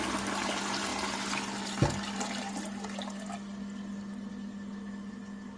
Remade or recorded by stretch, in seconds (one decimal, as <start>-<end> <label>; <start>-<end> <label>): 0.0-5.6 recorded